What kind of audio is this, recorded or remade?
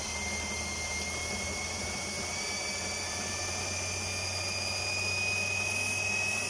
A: recorded